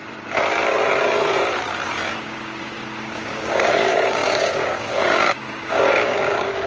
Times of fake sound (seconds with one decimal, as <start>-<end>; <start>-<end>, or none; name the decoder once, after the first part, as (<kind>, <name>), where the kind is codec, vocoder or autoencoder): 2.2-6.7 (codec, DAC)